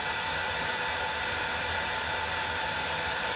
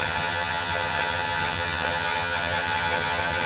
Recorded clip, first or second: first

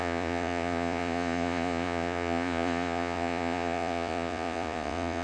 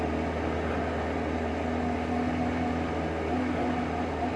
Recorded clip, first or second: second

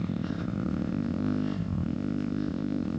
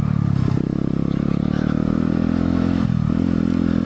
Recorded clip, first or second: second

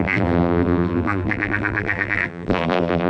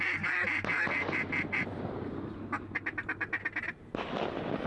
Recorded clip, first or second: second